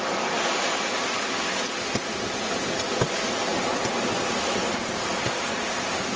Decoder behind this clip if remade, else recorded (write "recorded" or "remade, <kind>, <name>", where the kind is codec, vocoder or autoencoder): recorded